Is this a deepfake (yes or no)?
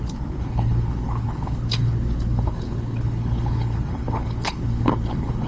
yes